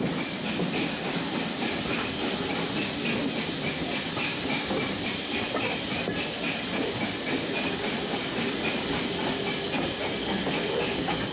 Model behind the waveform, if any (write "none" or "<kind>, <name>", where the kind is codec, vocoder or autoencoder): none